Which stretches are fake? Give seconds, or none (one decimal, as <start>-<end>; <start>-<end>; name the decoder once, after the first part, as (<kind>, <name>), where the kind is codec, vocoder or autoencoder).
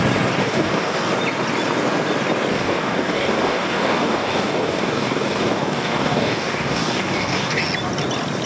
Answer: 0.4-1.0 (codec, DAC); 2.5-7.6